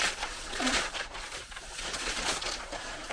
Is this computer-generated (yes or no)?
yes